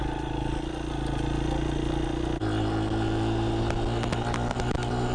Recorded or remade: recorded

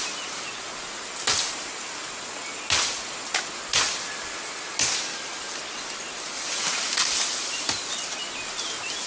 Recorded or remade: recorded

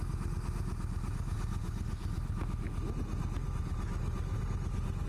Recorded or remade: recorded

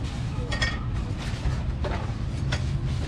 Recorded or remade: recorded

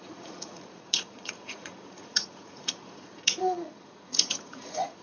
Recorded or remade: remade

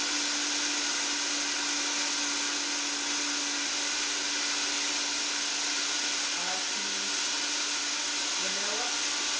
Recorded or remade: recorded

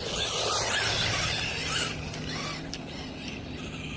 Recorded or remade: recorded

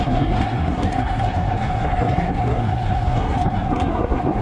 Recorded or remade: remade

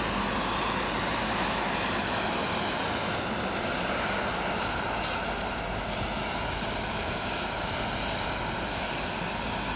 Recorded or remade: recorded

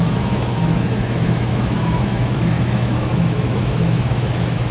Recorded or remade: remade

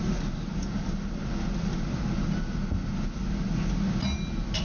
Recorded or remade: recorded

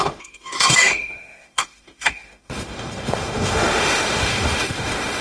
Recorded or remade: remade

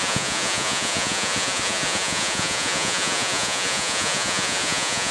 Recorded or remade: remade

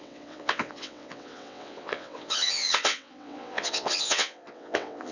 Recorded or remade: remade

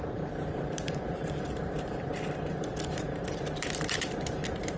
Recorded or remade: remade